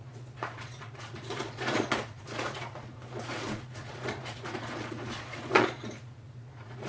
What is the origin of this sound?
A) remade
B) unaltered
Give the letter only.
A